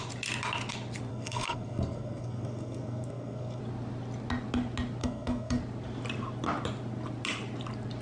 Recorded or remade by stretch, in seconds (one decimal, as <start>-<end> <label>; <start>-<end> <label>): 0.0-1.1 recorded; 1.1-3.6 remade; 3.6-5.0 recorded; 5.0-5.6 remade; 5.6-8.0 recorded

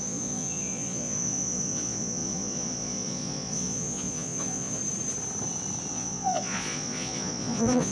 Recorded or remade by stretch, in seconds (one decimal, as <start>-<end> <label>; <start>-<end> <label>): 0.0-4.8 remade; 4.8-5.9 recorded; 5.9-7.9 remade

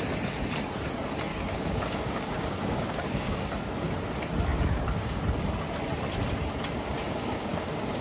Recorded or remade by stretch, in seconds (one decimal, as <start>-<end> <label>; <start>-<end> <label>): 0.0-1.3 recorded; 1.3-3.9 remade; 3.9-4.5 recorded; 4.5-5.2 remade; 5.2-7.0 recorded; 7.0-8.0 remade